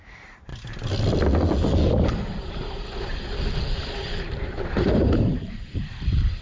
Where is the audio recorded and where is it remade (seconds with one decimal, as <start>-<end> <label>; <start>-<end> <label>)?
0.0-0.5 remade; 0.5-2.4 recorded; 2.4-3.1 remade; 3.1-3.8 recorded; 3.8-6.4 remade